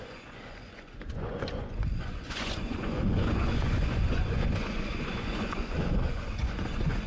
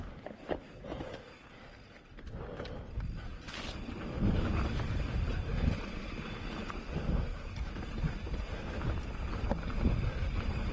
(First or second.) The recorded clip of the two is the second